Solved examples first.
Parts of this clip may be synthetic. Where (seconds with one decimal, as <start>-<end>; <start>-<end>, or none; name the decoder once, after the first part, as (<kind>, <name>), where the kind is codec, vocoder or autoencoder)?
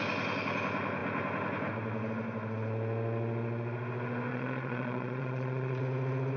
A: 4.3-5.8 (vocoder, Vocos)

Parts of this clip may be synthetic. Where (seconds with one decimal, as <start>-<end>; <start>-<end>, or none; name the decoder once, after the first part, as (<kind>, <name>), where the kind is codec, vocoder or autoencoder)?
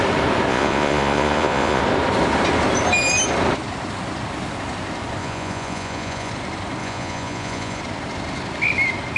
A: 0.5-1.8 (vocoder, Vocos); 5.2-6.3; 6.8-7.8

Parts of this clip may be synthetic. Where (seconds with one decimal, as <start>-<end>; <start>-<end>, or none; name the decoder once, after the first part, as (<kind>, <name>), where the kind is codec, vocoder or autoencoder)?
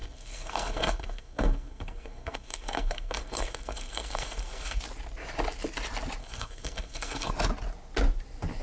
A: 0.0-4.8 (codec, SNAC); 6.2-7.3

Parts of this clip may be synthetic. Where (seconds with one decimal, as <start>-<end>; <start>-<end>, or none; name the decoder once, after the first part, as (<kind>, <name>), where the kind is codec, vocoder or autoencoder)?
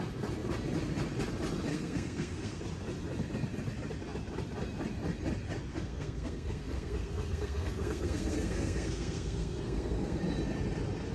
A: 1.7-2.6 (codec, SNAC); 5.7-10.2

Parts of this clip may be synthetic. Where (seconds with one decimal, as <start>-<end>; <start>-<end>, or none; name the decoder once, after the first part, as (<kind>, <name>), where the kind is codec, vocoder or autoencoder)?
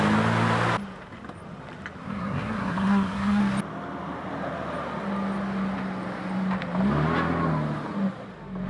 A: 2.0-3.4 (codec, SNAC)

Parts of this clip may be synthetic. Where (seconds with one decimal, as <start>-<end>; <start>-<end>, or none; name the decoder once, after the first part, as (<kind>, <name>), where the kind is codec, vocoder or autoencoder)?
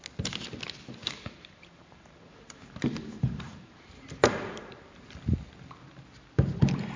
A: 1.0-5.2 (vocoder, BigVGAN v2)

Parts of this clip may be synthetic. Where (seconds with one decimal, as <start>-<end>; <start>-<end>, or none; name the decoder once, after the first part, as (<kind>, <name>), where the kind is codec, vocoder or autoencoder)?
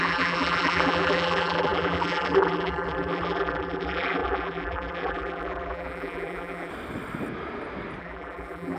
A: 0.0-6.7 (vocoder, BigVGAN v2); 8.0-8.8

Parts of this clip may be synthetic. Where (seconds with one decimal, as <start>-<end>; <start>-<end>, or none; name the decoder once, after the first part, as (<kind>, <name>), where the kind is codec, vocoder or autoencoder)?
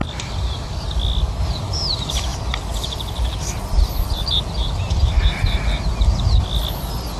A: none